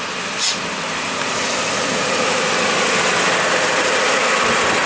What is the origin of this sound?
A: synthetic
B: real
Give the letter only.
B